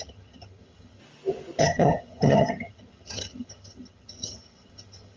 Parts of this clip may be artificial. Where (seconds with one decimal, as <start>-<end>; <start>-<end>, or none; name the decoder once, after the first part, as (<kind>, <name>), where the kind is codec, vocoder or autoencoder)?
0.0-1.0 (vocoder, HiFi-GAN); 1.6-5.2